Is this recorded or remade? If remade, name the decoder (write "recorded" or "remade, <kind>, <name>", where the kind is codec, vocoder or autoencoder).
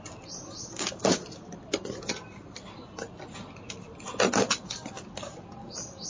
remade, vocoder, BigVGAN v2